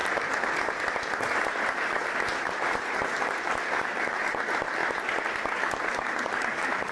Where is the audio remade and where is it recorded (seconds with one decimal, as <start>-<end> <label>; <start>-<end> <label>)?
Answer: 0.0-1.7 recorded; 1.7-4.8 remade; 4.8-5.8 recorded; 5.8-6.9 remade